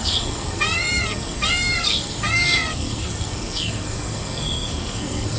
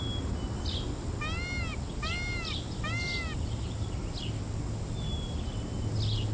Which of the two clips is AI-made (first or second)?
first